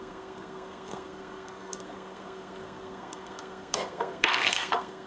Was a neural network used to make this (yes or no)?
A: yes